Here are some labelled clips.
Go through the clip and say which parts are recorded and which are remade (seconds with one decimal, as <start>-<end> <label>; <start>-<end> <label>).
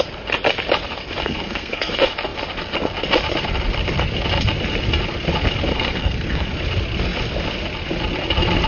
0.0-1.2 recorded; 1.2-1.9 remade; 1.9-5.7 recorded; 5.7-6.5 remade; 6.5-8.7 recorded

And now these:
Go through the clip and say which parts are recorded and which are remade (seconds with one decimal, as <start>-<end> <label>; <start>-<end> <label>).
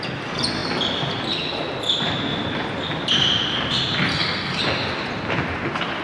0.0-4.1 recorded; 4.1-4.6 remade; 4.6-6.0 recorded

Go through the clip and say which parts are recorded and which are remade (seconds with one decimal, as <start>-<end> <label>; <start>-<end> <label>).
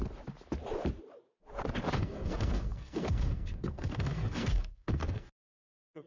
0.0-2.0 recorded; 2.0-6.1 remade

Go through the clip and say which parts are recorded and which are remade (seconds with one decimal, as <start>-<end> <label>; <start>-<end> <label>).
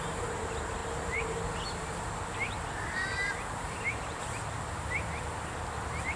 0.0-0.8 recorded; 0.8-1.4 remade; 1.4-3.2 recorded; 3.2-4.4 remade; 4.4-6.2 recorded